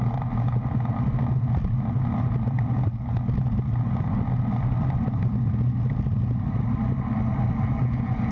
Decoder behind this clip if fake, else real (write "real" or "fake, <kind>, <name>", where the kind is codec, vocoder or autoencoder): real